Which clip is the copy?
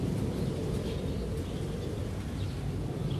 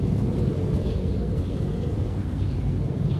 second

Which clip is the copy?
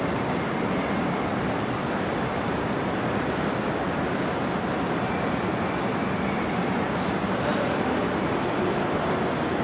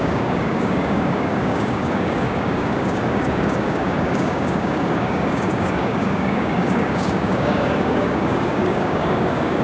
second